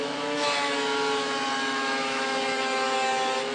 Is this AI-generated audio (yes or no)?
yes